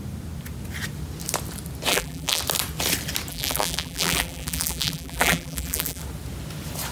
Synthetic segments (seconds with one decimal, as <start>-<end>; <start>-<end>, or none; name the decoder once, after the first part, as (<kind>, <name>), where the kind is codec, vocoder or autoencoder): 1.9-2.4 (vocoder, BigVGAN v2); 3.3-6.0

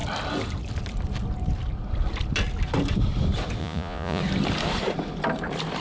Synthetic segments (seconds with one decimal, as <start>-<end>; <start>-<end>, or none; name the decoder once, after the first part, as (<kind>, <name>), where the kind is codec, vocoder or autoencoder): 3.6-4.2 (vocoder, Vocos)

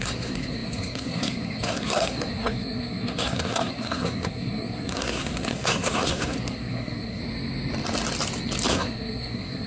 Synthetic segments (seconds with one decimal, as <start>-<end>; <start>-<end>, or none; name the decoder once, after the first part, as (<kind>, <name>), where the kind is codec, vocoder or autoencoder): 0.0-7.2 (codec, SNAC); 8.7-9.7

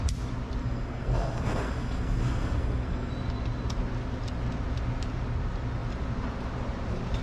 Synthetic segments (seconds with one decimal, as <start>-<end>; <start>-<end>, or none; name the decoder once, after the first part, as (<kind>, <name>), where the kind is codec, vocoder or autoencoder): 0.6-3.1 (codec, SNAC)